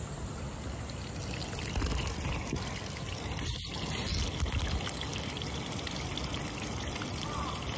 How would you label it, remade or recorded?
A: recorded